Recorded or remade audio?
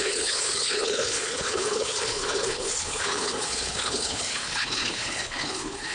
remade